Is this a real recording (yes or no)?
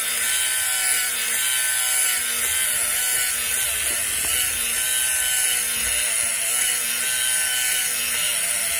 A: yes